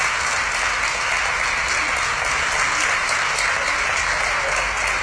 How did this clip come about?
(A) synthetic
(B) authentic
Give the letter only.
B